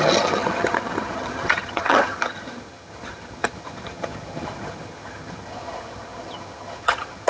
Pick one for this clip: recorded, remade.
remade